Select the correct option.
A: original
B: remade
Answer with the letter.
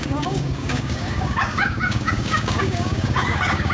B